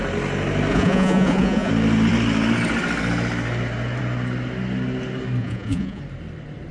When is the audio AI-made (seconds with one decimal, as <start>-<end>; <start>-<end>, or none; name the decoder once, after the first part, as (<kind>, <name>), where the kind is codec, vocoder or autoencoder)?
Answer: 0.7-1.7 (vocoder, Vocos); 5.4-6.0